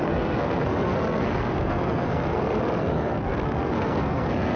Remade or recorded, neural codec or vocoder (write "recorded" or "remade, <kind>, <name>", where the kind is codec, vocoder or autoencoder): remade, codec, SNAC